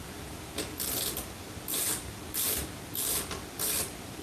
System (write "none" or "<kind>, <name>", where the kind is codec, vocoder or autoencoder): none